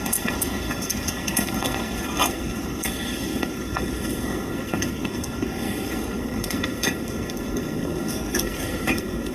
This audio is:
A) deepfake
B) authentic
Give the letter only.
A